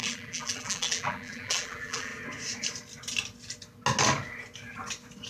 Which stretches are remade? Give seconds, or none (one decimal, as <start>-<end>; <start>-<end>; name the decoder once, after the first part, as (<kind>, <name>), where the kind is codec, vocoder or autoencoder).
0.0-2.1 (vocoder, BigVGAN v2)